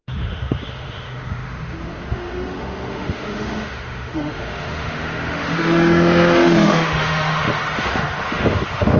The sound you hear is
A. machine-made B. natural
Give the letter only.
A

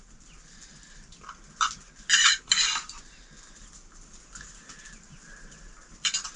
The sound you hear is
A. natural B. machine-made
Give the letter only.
B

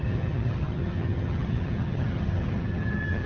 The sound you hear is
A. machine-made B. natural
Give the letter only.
A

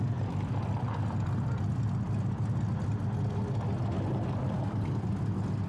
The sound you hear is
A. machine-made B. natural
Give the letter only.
B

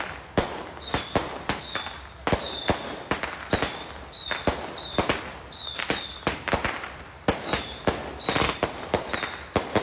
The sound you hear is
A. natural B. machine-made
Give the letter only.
A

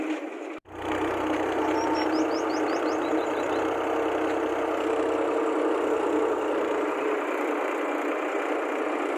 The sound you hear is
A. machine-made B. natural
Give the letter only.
B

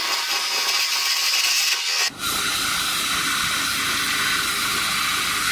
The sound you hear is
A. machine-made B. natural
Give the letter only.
B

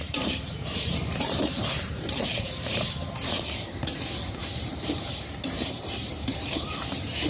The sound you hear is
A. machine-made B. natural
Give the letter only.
A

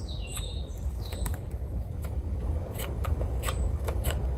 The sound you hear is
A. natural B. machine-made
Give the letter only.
B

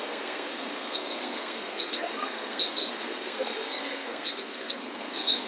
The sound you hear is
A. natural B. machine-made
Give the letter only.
B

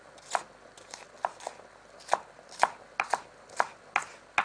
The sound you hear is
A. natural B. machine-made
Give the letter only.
A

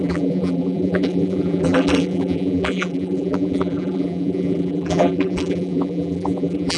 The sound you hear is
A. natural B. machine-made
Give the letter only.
B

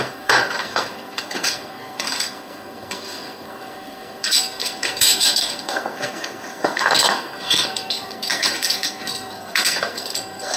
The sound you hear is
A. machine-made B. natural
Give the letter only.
A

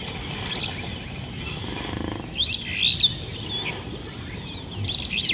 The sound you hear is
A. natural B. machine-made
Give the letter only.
A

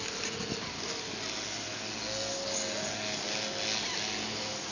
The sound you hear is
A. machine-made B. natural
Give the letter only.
B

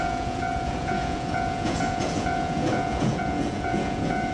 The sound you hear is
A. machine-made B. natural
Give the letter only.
A